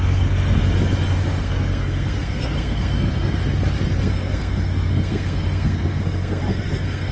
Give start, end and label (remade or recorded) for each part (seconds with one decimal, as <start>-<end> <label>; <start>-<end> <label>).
0.0-0.6 remade; 0.6-1.4 recorded; 1.4-3.4 remade; 3.4-4.0 recorded; 4.0-7.1 remade